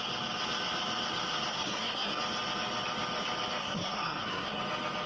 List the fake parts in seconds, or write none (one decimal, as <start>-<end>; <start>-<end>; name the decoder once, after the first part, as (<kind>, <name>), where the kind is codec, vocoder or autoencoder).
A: 1.5-2.2 (codec, SNAC); 3.6-4.6